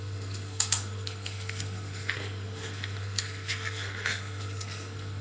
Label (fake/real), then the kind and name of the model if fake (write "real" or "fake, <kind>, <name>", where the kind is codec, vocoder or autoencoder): fake, codec, SNAC